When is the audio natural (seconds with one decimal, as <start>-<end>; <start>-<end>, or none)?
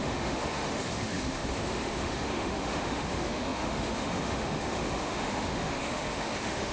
none